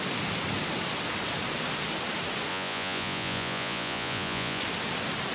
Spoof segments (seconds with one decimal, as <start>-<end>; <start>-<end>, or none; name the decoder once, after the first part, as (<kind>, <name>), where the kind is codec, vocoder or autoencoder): 2.5-4.6 (vocoder, Vocos)